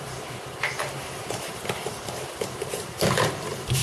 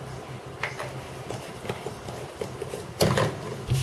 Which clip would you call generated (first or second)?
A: first